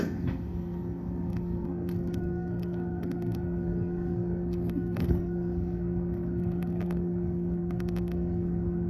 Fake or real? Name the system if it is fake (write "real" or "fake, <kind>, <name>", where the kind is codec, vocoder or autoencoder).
fake, codec, SNAC